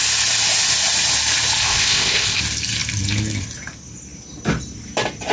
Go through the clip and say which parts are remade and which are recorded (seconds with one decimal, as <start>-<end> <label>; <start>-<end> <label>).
0.0-1.6 recorded; 1.6-2.4 remade; 2.4-5.3 recorded